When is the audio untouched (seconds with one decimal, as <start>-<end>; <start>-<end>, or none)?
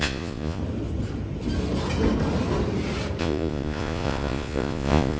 0.6-3.2